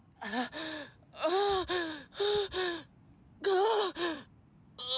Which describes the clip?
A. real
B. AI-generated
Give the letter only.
A